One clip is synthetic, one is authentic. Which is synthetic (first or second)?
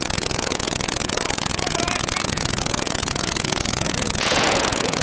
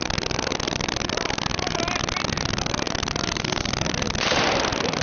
first